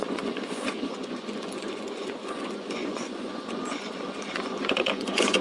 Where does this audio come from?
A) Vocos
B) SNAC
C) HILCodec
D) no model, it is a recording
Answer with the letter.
A